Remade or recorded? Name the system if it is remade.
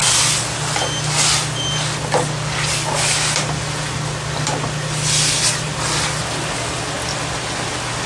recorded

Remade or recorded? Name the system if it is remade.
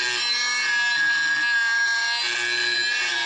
recorded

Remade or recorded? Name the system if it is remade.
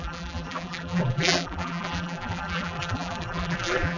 remade, vocoder, BigVGAN v2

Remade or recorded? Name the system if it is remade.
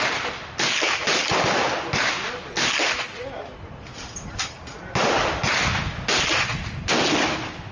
recorded